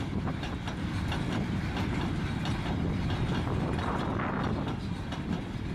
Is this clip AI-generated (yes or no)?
no